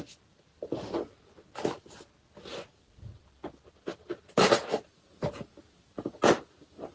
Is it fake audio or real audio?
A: real